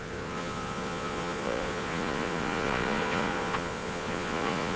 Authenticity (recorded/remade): remade